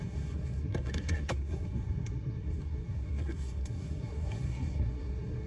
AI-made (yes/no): yes